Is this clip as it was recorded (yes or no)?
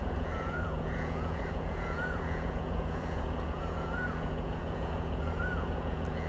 no